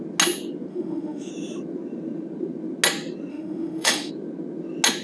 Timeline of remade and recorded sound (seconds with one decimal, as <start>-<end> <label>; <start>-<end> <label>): 0.0-0.7 recorded; 0.7-1.3 remade; 1.3-3.3 recorded; 3.3-4.1 remade; 4.1-5.0 recorded